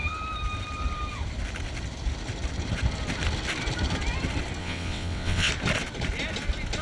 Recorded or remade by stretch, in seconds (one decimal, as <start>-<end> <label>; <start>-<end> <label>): 0.0-4.6 recorded; 4.6-5.5 remade; 5.5-6.8 recorded